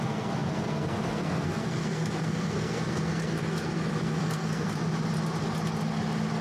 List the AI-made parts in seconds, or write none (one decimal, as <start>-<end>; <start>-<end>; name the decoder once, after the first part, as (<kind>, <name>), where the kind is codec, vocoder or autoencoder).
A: 0.0-4.8 (codec, SNAC)